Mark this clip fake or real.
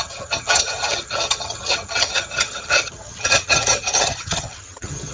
fake